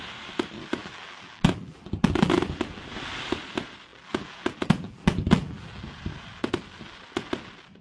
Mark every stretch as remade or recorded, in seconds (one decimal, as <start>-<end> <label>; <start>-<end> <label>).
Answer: 0.0-0.8 recorded; 0.8-2.8 remade; 2.8-3.9 recorded; 3.9-5.9 remade; 5.9-7.8 recorded